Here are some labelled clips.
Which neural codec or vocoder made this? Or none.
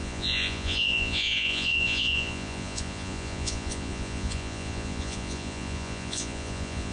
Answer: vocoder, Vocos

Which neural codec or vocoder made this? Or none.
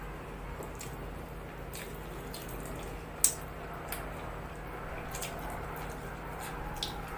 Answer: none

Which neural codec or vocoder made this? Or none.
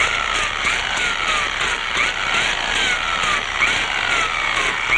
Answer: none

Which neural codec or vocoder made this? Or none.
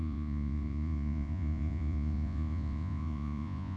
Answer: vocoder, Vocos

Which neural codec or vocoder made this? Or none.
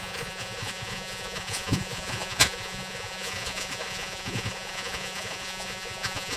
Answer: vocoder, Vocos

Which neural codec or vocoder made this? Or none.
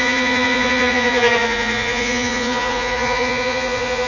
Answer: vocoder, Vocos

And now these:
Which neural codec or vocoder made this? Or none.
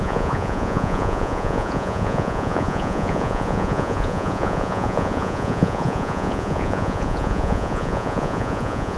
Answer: vocoder, Vocos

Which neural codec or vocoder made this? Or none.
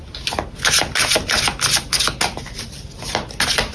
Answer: none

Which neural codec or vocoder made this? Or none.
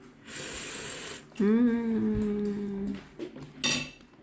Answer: none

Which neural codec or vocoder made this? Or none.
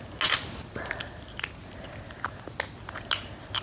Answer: none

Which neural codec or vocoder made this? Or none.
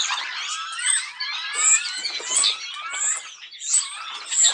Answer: none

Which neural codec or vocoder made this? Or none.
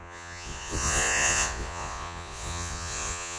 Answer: vocoder, Vocos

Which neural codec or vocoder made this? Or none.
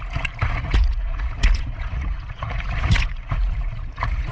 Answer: vocoder, Vocos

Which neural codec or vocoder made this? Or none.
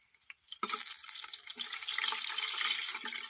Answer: none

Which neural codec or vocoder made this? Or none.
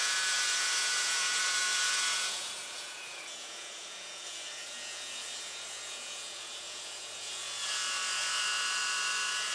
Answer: vocoder, Vocos